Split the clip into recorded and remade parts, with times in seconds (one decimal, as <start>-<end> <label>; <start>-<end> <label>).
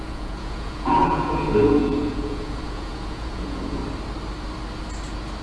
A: 0.0-3.8 remade; 3.8-5.4 recorded